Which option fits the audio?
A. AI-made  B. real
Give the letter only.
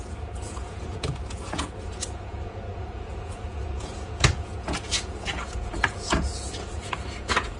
A